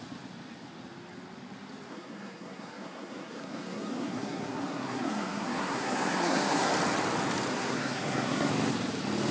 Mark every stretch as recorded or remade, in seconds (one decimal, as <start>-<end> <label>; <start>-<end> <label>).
0.0-1.9 recorded; 1.9-6.7 remade; 6.7-7.5 recorded; 7.5-8.5 remade; 8.5-9.3 recorded